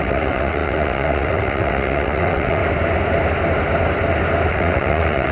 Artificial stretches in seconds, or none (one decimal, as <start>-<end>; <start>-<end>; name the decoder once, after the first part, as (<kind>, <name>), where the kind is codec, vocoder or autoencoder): 0.0-2.6 (vocoder, WaveNeXt); 4.5-5.3